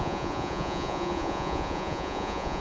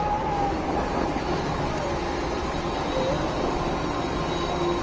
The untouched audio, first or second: second